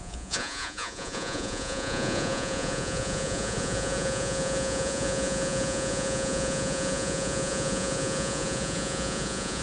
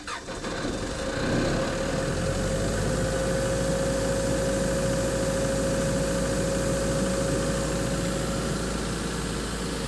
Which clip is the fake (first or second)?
first